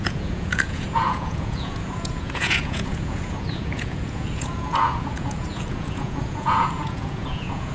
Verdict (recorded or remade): remade